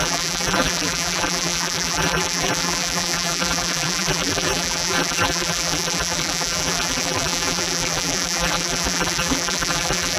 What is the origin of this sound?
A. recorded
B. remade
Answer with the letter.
B